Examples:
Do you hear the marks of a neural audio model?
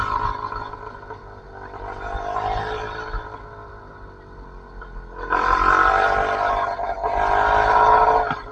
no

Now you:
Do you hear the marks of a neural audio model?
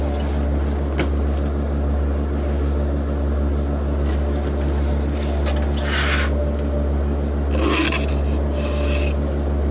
no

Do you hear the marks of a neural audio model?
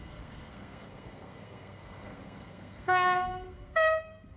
yes